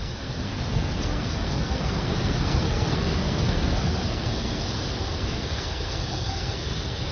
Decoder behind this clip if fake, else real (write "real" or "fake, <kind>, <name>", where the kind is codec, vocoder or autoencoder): fake, codec, SNAC